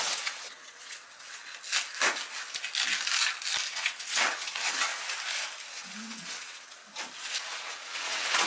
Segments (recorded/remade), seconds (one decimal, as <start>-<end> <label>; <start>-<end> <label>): 0.0-1.5 remade; 1.5-3.7 recorded; 3.7-4.9 remade; 4.9-5.7 recorded; 5.7-6.8 remade; 6.8-7.4 recorded; 7.4-8.5 remade